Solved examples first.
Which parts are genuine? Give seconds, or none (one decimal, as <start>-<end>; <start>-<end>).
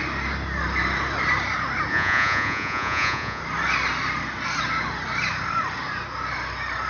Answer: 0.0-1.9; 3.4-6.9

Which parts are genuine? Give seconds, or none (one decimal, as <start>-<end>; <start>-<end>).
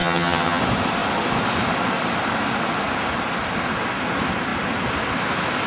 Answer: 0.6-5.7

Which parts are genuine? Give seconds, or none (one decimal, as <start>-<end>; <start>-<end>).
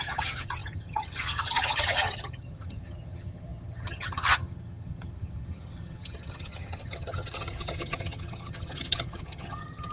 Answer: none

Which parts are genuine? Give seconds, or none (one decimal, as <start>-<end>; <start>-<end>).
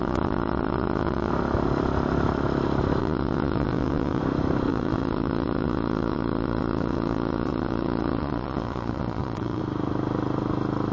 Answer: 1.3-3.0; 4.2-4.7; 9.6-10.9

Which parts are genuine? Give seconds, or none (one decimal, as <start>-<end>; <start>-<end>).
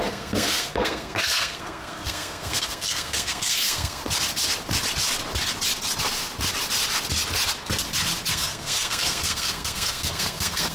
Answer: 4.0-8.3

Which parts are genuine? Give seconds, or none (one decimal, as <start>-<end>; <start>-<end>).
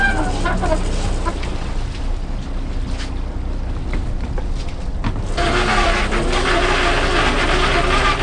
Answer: 0.0-1.5; 2.0-8.2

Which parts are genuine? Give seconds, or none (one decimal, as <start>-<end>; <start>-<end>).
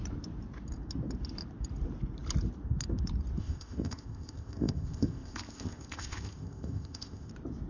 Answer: 0.0-3.4; 7.3-7.7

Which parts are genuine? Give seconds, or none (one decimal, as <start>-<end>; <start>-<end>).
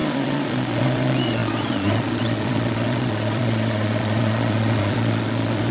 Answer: none